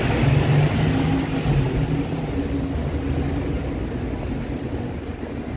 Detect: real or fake real